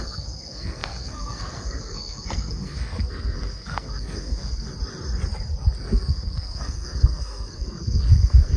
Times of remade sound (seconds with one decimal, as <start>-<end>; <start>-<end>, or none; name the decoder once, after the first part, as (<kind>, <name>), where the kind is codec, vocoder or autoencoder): 0.0-4.7 (codec, SNAC); 5.8-8.6